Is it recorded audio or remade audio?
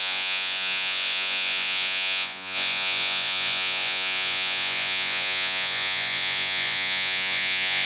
remade